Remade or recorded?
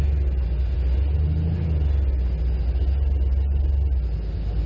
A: recorded